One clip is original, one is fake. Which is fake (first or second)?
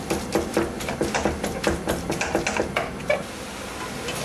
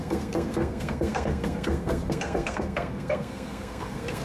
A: second